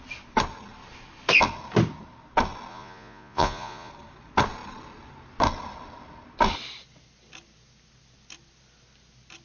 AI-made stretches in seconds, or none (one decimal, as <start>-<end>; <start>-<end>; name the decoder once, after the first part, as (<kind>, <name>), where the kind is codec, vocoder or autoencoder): 2.7-3.9 (vocoder, Vocos)